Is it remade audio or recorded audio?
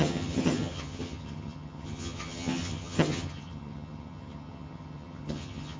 remade